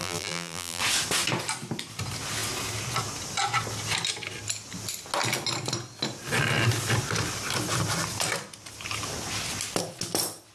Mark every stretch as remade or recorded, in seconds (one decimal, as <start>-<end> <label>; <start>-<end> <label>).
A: 0.0-0.8 remade; 0.8-10.5 recorded